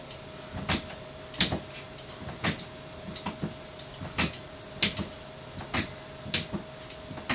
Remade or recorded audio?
recorded